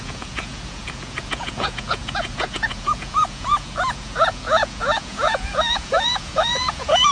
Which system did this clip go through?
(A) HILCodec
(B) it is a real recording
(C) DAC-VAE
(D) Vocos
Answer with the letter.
D